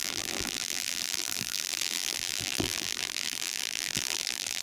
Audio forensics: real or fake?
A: fake